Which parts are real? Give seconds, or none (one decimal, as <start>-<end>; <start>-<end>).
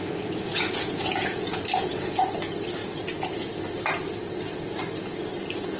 2.2-5.8